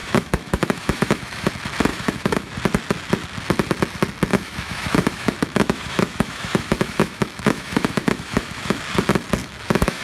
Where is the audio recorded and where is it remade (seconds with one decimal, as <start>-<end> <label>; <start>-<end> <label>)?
0.0-1.5 remade; 1.5-1.9 recorded; 1.9-2.5 remade; 2.5-4.3 recorded; 4.3-8.8 remade; 8.8-9.4 recorded; 9.4-10.0 remade